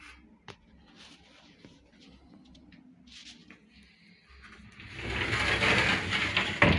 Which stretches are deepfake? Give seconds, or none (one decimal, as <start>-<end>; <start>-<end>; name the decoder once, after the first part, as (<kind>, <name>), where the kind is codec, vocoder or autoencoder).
none